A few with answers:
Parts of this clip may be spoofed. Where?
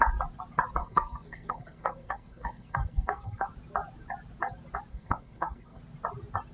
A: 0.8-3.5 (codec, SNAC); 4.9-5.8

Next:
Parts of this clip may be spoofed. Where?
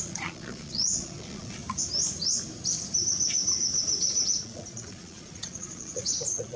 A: 0.0-1.6 (vocoder, Vocos); 4.2-6.6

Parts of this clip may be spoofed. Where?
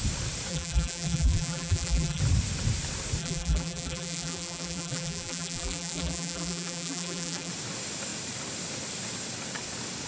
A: 0.5-2.2 (vocoder, BigVGAN v2); 3.2-7.5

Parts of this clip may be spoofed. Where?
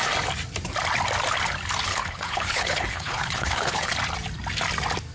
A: 1.9-3.9 (codec, HILCodec)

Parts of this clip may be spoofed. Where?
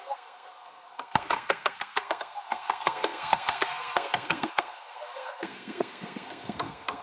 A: 0.0-7.0 (codec, SNAC)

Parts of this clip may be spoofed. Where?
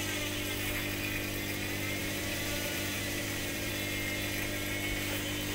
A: 2.0-3.7 (vocoder, BigVGAN v2)